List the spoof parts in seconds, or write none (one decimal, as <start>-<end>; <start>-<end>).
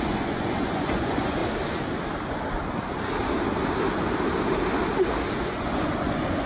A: 0.0-1.4; 5.3-6.5